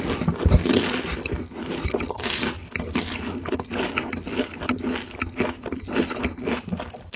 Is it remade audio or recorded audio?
recorded